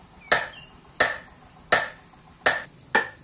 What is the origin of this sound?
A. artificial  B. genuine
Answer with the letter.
B